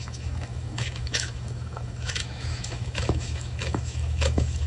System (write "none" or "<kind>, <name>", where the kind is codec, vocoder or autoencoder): autoencoder, DAC-VAE